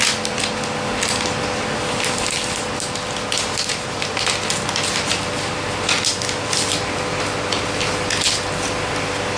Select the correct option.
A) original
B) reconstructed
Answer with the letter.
A